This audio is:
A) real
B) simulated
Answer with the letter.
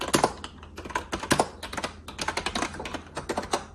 A